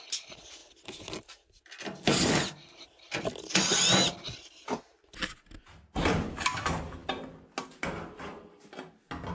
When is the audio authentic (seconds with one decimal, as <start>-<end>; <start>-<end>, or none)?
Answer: 0.0-9.3